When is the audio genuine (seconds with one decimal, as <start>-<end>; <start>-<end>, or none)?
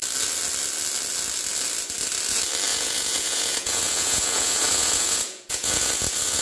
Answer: 0.0-2.7